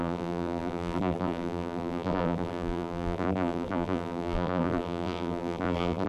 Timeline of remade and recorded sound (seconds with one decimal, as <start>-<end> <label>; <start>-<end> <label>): 0.0-6.1 remade

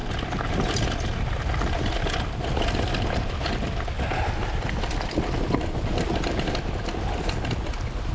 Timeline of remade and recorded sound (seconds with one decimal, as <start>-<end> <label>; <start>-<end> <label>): 0.0-8.1 recorded